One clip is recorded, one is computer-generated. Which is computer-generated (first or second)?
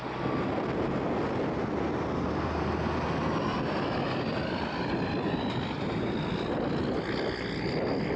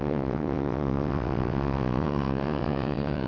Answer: second